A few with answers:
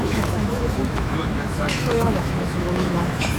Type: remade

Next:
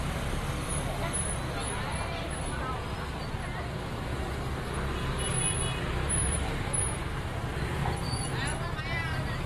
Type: recorded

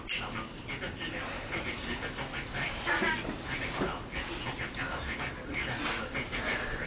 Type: recorded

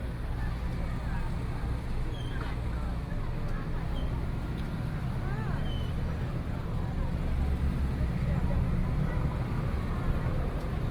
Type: recorded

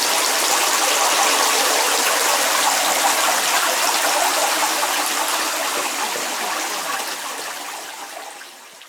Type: recorded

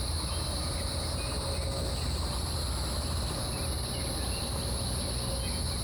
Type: recorded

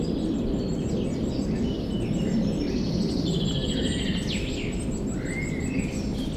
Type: recorded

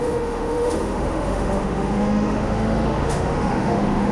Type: remade